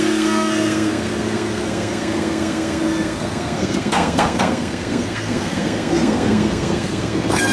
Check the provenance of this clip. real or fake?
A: fake